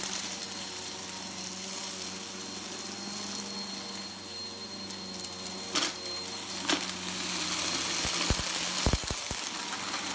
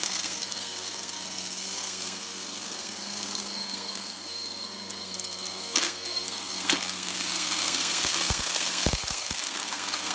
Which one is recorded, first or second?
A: first